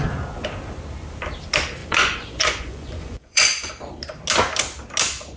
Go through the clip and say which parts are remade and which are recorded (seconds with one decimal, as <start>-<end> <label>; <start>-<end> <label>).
0.0-1.8 recorded; 1.8-3.7 remade; 3.7-5.4 recorded